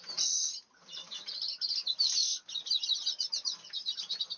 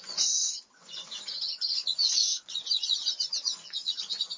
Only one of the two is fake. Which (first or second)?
second